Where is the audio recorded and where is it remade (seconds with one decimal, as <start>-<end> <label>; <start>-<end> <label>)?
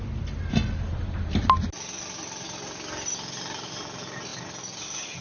0.0-5.2 recorded